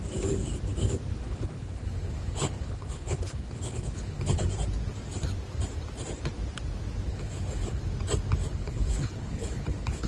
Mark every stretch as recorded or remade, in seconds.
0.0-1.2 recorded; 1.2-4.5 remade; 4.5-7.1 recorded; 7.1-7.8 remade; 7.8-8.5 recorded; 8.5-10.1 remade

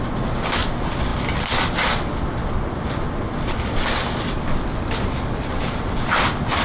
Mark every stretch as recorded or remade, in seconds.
0.0-6.6 recorded